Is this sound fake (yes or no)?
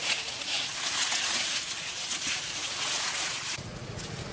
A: yes